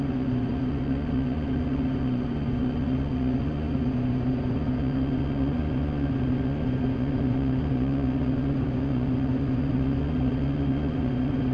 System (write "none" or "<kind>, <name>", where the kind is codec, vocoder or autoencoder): vocoder, Vocos